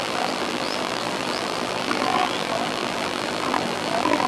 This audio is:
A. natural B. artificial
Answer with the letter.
B